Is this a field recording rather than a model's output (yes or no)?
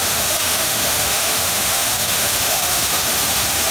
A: no